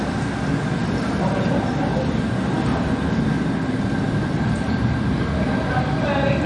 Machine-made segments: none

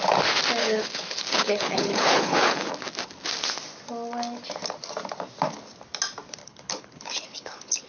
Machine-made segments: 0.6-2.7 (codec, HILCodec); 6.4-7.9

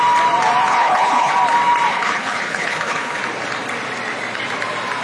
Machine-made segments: 0.7-1.3 (codec, HILCodec); 1.9-3.2

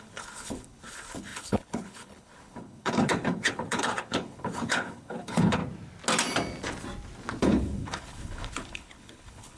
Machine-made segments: 0.0-5.6 (codec, HILCodec); 7.4-9.6

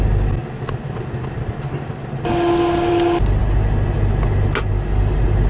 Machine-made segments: none

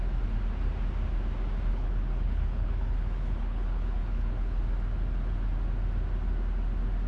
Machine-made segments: 1.7-4.6 (codec, HILCodec)